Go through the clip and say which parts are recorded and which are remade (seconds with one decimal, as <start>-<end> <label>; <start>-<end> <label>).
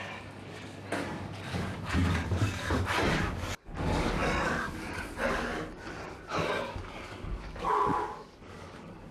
0.0-9.1 remade